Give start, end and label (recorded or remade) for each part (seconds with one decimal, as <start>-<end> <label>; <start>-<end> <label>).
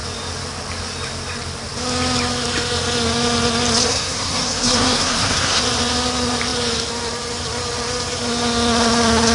0.0-3.9 recorded; 3.9-5.6 remade; 5.6-9.3 recorded